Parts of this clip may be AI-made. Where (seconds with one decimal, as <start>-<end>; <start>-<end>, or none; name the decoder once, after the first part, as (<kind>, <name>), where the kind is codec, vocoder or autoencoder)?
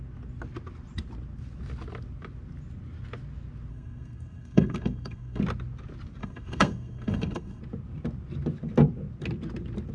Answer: 3.7-5.4 (codec, SNAC); 6.2-7.6